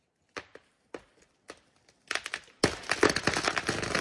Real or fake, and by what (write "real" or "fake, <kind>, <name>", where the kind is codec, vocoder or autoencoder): real